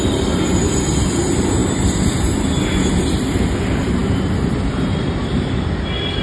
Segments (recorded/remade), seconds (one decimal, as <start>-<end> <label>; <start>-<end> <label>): 0.0-6.2 recorded